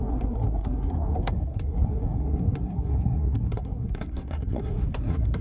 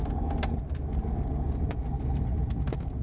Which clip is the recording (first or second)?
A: second